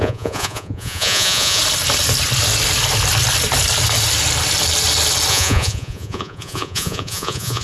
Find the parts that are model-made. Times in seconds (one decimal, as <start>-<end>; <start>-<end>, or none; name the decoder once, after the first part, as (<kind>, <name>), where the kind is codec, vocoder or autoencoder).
0.0-1.6 (vocoder, Vocos); 5.3-7.6

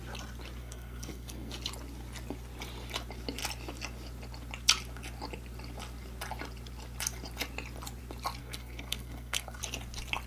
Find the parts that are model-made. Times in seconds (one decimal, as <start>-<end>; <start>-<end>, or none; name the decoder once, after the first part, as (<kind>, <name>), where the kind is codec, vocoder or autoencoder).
0.6-1.5 (codec, SNAC); 8.4-9.6